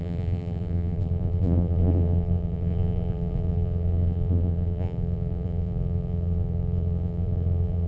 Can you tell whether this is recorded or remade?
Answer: remade